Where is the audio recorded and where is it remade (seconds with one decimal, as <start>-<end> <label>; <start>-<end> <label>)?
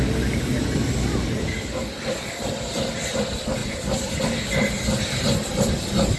0.0-6.2 recorded